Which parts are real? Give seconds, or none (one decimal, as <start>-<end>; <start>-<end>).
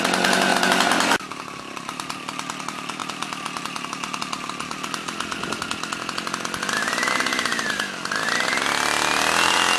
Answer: 0.0-9.8